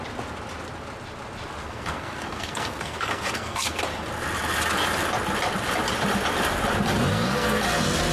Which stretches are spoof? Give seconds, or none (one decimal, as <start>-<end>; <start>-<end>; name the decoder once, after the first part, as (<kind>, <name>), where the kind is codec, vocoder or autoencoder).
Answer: 1.6-3.8 (codec, SNAC); 7.1-7.6